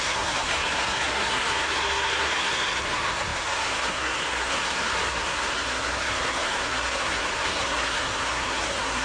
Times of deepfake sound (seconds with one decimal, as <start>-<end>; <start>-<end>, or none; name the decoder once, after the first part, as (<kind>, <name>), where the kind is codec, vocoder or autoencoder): 0.0-9.0 (codec, SNAC)